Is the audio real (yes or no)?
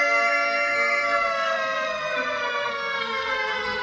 no